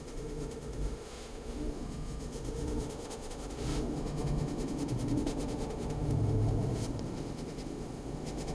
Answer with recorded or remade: remade